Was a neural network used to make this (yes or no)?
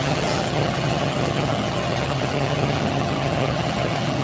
yes